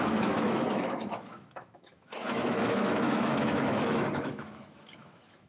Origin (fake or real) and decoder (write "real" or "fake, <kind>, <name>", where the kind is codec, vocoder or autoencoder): fake, autoencoder, DAC-VAE